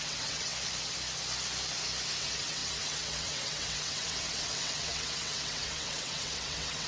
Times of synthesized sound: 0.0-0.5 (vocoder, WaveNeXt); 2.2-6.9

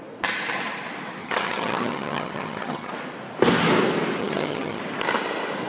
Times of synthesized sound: 1.2-2.9 (vocoder, HiFi-GAN); 4.2-4.8

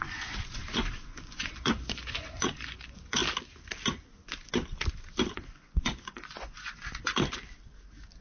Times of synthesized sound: 0.0-3.2 (vocoder, Vocos); 5.3-7.1

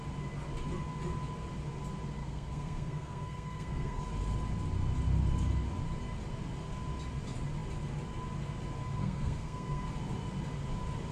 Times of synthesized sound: 2.2-4.0 (codec, SNAC); 9.0-9.9

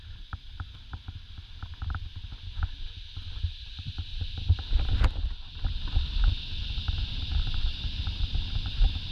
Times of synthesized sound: 3.2-4.4 (vocoder, BigVGAN v2)